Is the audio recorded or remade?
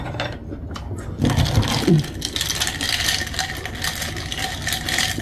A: recorded